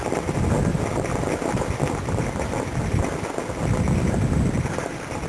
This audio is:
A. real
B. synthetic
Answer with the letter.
A